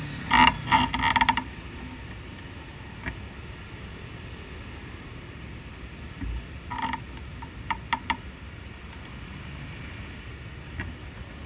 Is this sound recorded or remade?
recorded